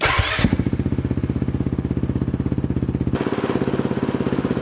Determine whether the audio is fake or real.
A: real